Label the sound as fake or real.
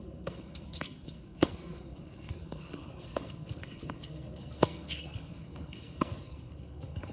fake